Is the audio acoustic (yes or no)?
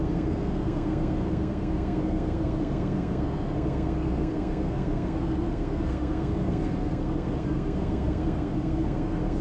no